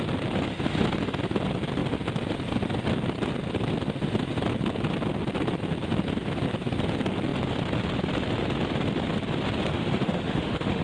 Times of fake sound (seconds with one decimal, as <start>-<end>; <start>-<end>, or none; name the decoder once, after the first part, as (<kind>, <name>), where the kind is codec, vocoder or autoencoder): 9.7-10.8 (autoencoder, DAC-VAE)